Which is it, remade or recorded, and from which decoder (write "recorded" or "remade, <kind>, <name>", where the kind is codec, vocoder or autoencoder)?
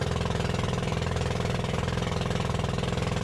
remade, vocoder, BigVGAN v2